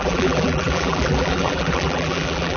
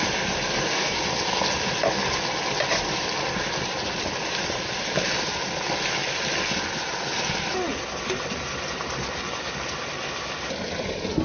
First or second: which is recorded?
second